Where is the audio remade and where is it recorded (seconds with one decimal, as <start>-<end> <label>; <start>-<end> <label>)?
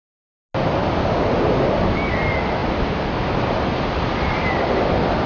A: 0.0-0.8 recorded; 0.8-1.3 remade; 1.3-5.3 recorded